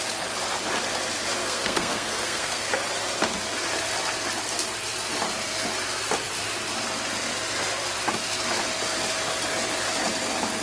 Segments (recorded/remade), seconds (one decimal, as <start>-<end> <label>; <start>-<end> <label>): 0.0-1.4 recorded; 1.4-2.7 remade; 2.7-10.6 recorded